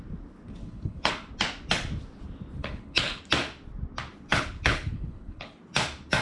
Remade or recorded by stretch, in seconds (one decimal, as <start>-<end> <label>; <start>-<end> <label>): 0.0-0.6 recorded; 0.6-1.1 remade; 1.1-2.6 recorded; 2.6-3.2 remade; 3.2-4.3 recorded; 4.3-5.6 remade; 5.6-6.2 recorded